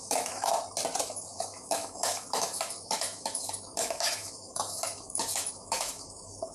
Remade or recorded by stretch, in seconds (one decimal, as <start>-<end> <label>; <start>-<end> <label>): 0.0-0.5 remade; 0.5-1.0 recorded; 1.0-6.5 remade